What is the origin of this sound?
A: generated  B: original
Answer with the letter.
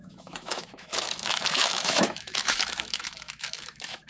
A